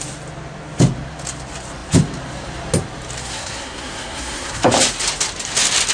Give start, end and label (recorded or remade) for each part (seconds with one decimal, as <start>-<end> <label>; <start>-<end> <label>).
0.0-3.2 recorded; 3.2-4.7 remade; 4.7-5.9 recorded